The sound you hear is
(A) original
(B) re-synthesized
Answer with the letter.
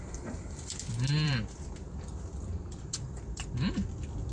B